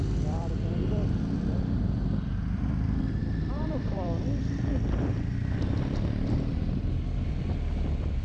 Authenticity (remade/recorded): remade